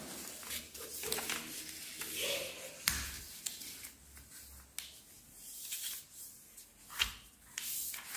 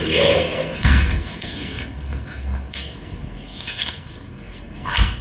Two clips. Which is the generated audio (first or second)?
second